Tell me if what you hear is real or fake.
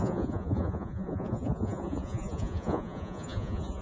fake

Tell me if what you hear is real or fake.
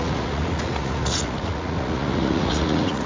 fake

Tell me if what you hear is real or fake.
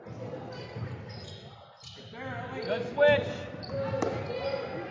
real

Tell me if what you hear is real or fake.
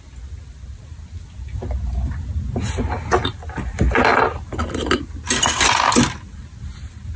real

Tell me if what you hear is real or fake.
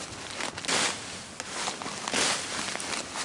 real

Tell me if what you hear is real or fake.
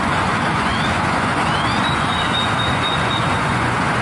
fake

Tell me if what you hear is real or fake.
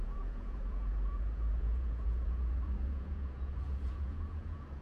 fake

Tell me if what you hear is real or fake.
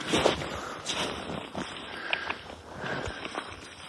real